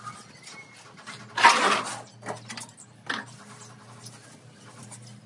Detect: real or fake real